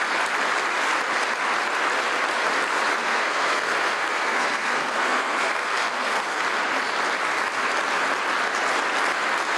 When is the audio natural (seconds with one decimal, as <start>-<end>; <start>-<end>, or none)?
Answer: 0.0-3.0; 6.4-9.6